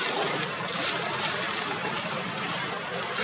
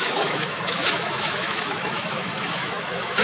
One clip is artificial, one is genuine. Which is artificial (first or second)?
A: second